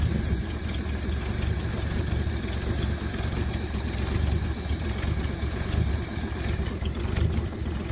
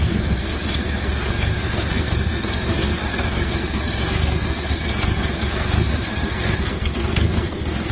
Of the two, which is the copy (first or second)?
second